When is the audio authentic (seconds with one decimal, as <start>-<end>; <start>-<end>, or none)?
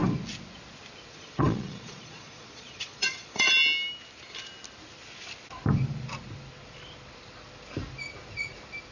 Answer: 0.0-1.1; 3.5-8.9